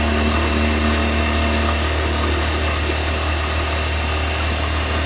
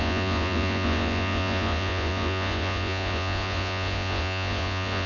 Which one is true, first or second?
first